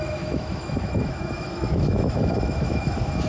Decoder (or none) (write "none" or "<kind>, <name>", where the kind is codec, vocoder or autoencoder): autoencoder, DAC-VAE